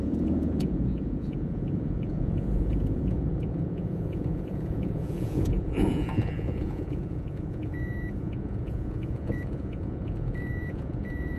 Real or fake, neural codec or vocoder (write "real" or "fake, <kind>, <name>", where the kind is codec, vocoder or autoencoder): fake, vocoder, Vocos